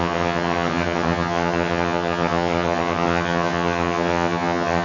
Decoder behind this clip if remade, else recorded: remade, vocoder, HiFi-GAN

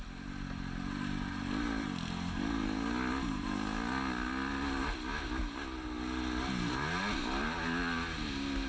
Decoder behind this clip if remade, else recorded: recorded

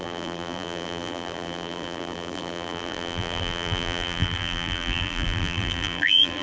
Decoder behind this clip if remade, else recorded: remade, vocoder, BigVGAN v2